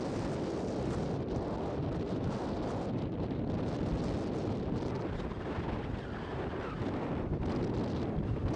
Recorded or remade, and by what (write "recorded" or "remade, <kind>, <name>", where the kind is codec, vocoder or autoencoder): recorded